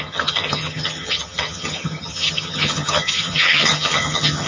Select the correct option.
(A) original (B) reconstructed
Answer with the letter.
B